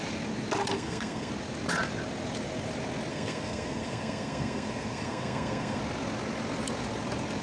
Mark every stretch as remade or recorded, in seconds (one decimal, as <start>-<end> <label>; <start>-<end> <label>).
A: 0.0-0.6 recorded; 0.6-1.3 remade; 1.3-3.1 recorded; 3.1-5.8 remade; 5.8-7.4 recorded